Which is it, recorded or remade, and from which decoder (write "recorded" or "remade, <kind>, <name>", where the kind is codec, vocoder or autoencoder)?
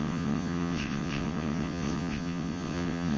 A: remade, vocoder, WaveNeXt